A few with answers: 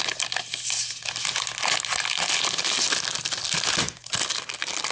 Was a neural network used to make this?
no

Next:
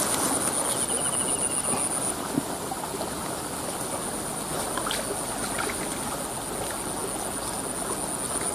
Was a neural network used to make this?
no